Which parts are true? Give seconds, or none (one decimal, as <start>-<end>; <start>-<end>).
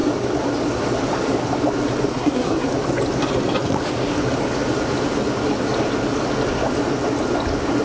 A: 0.0-2.1; 2.7-7.8